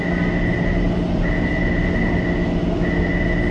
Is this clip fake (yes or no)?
no